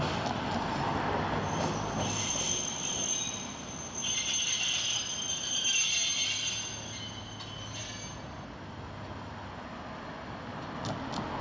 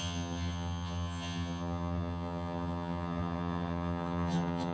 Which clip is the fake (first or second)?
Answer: second